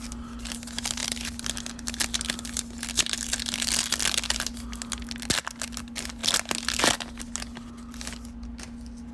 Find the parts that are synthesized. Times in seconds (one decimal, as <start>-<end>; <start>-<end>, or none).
none